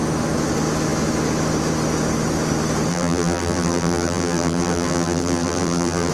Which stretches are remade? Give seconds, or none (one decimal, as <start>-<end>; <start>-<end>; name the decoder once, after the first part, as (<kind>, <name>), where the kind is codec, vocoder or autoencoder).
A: 2.9-6.1 (vocoder, BigVGAN v2)